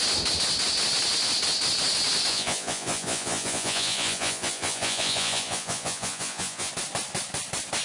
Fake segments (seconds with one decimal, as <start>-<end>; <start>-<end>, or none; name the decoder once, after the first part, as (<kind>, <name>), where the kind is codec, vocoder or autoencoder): 2.3-6.7 (vocoder, Vocos)